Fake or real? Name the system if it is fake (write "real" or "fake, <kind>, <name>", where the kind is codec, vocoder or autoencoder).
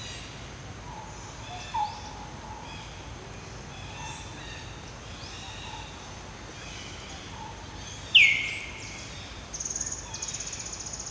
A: real